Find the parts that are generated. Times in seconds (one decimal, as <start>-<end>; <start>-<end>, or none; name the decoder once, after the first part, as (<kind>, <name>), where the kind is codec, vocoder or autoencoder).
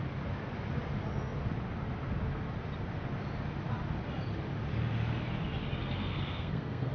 6.0-6.9 (codec, SNAC)